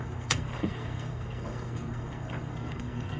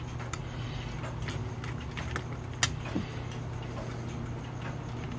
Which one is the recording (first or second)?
second